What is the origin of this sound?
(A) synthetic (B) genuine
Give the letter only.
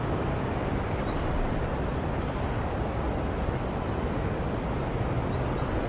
B